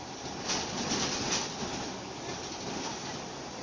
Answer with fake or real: real